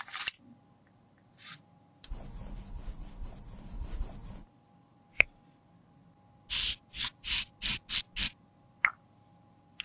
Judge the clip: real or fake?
real